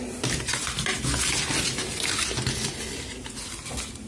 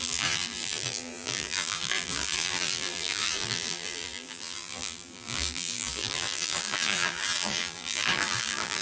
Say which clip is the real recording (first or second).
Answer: first